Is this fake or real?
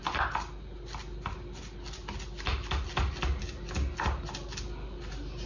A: real